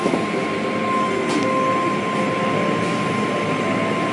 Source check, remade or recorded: recorded